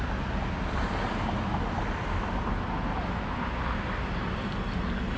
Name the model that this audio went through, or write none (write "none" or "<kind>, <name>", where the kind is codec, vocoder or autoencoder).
none